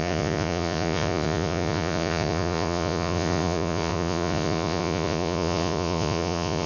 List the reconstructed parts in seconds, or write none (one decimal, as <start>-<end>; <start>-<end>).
0.0-6.7